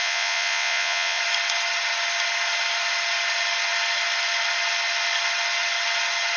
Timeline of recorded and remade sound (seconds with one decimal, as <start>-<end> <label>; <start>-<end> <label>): 0.0-1.2 remade; 1.2-6.4 recorded